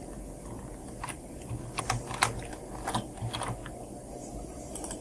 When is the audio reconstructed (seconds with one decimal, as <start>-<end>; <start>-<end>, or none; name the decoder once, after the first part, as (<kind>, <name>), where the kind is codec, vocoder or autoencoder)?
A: none